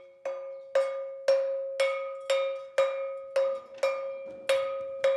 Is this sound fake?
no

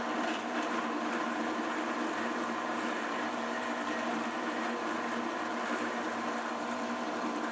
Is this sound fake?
yes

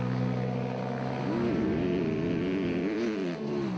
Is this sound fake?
no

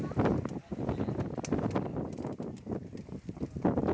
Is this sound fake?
no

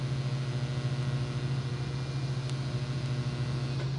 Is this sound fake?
no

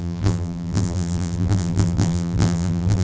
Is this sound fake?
yes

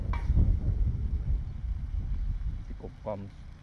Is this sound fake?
no